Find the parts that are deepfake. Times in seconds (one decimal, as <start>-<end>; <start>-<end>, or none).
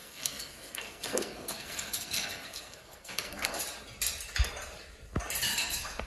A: 0.0-3.6; 5.5-6.1